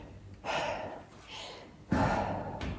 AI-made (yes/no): no